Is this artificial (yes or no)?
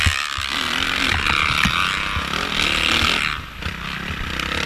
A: no